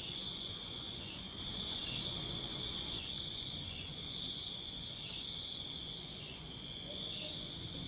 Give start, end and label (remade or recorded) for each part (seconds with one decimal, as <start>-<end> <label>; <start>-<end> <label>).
0.0-7.9 remade